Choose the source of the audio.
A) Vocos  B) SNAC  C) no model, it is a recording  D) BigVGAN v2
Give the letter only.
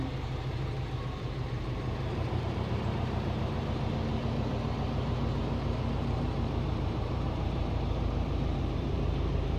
D